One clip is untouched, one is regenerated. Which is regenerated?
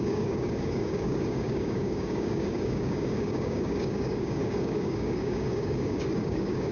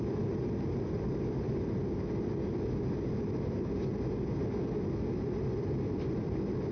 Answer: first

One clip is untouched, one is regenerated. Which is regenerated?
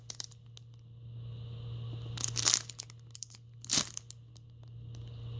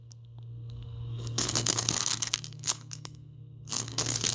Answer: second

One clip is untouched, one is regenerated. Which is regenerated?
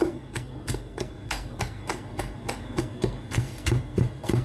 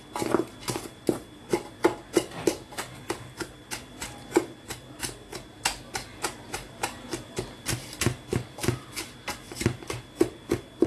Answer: first